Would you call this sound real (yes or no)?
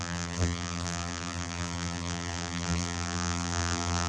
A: no